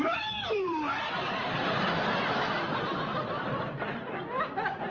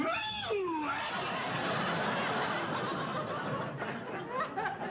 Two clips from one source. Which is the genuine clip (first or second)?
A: second